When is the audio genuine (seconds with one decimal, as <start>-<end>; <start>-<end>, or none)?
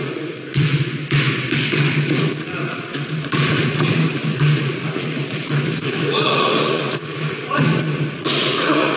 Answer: 1.0-1.6